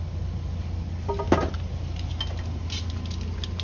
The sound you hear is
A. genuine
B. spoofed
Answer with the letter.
A